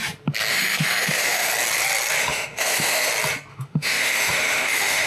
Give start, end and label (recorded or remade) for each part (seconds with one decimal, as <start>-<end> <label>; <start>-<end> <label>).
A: 0.0-0.5 recorded; 0.5-1.5 remade; 1.5-2.2 recorded; 2.2-3.1 remade; 3.1-3.5 recorded; 3.5-5.1 remade